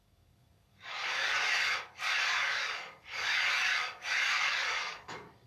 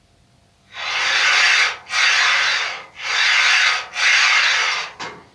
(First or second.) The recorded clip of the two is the second